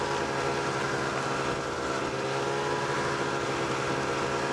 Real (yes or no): yes